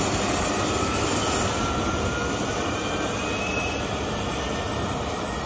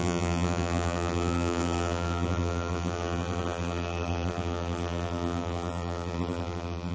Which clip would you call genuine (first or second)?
first